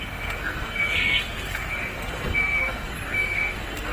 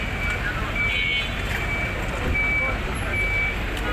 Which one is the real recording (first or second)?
second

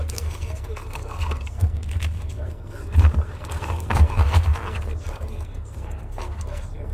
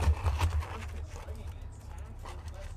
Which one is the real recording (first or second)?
second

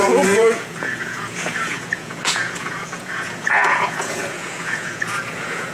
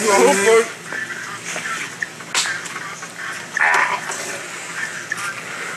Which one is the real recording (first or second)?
second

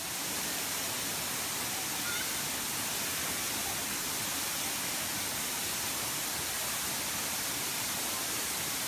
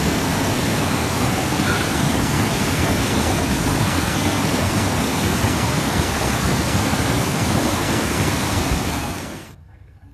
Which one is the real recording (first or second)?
first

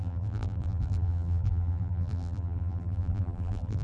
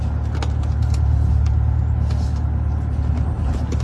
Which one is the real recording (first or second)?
second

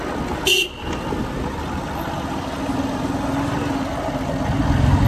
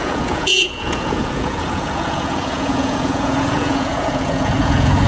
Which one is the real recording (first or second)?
first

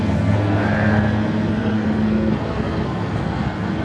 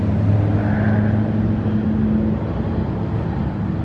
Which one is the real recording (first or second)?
second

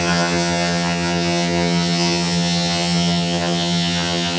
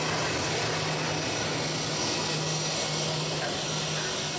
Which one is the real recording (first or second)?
second